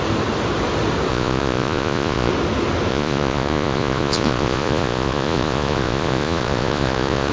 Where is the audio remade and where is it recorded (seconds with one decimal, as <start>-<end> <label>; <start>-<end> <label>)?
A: 0.0-1.1 recorded; 1.1-2.3 remade; 2.3-2.9 recorded; 2.9-7.3 remade